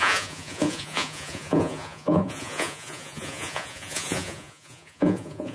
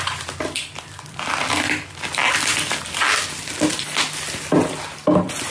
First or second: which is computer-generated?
first